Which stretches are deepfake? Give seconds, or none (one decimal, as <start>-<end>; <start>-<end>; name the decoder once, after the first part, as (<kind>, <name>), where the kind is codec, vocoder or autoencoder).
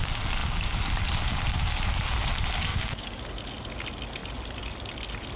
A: 2.7-3.2 (codec, DAC)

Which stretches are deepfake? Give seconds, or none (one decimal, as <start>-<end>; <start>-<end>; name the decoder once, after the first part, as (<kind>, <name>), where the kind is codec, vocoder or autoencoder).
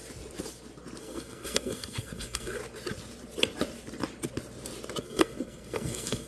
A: 1.0-2.6 (codec, SNAC); 5.0-6.3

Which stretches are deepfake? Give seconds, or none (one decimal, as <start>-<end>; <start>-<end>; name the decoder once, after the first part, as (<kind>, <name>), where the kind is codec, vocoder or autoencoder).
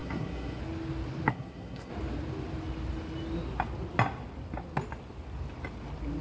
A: 0.0-0.6 (codec, SNAC); 1.3-1.9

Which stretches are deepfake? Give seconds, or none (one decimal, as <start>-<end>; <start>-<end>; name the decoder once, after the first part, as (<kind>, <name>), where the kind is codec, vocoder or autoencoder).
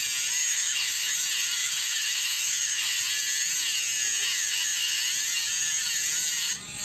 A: 0.4-1.1 (autoencoder, DAC-VAE); 1.6-3.0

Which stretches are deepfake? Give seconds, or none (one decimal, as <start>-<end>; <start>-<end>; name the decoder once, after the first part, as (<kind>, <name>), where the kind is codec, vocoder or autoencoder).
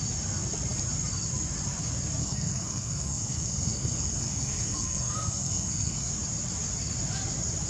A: 2.2-6.1 (codec, SNAC)